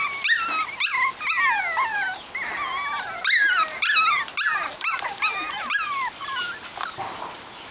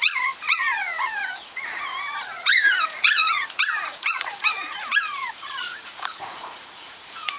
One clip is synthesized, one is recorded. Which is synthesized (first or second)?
second